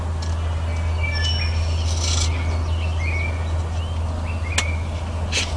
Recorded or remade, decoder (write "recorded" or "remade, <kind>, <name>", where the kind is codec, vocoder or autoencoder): recorded